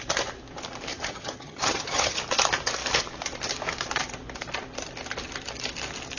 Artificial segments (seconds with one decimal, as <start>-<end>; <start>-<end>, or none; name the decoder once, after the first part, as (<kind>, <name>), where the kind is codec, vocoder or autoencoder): 0.9-2.2 (vocoder, HiFi-GAN)